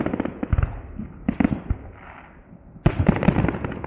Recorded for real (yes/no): yes